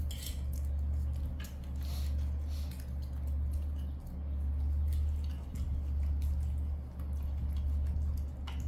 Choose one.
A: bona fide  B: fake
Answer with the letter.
A